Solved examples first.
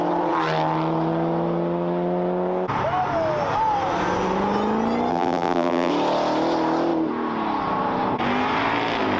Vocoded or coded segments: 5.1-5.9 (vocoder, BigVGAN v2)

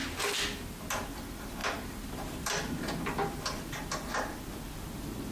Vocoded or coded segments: 1.0-5.3 (vocoder, BigVGAN v2)

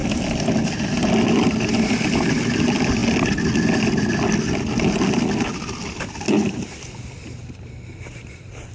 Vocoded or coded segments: 0.6-3.0 (vocoder, BigVGAN v2); 7.5-8.7

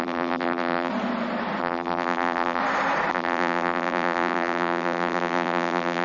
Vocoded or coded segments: 0.0-0.9 (vocoder, BigVGAN v2); 1.6-2.6; 3.1-6.0

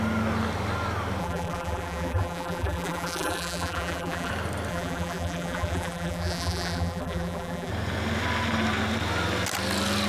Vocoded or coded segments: 1.2-4.3 (vocoder, BigVGAN v2); 4.7-7.7

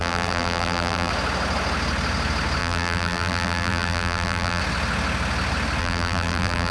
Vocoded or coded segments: 0.0-1.1 (vocoder, BigVGAN v2); 2.6-4.6; 5.8-6.7